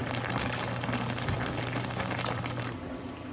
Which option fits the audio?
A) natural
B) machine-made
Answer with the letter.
A